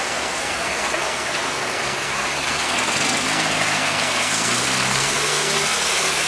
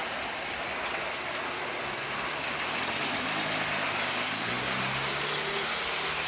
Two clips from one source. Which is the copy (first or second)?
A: first